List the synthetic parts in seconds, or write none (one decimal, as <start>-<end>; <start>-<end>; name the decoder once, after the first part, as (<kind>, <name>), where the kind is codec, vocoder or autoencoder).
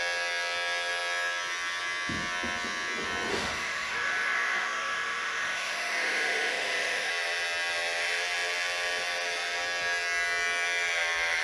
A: 3.3-7.1 (autoencoder, DAC-VAE)